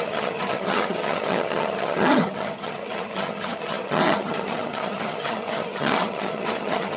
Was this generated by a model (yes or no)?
yes